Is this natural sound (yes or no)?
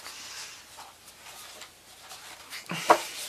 yes